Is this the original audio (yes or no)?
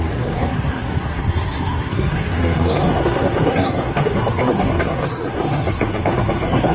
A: no